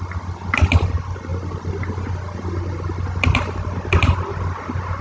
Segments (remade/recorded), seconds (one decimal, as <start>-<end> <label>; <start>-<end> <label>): 0.0-5.0 recorded